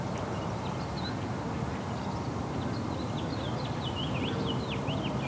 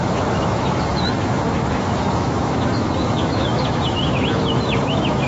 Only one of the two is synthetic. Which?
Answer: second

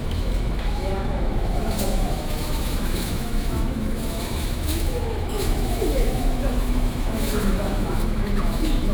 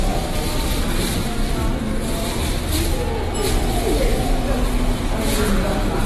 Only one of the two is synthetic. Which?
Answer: first